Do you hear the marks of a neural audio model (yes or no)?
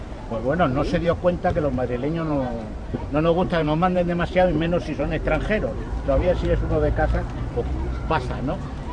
yes